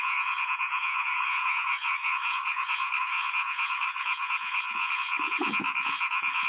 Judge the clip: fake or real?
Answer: fake